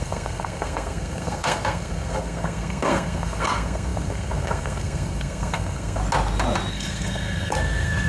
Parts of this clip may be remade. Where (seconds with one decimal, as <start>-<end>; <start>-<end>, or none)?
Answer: 0.0-6.0; 6.7-8.1